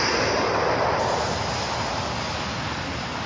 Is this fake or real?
real